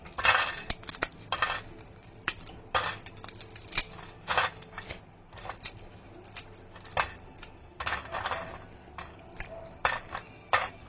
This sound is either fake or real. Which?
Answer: real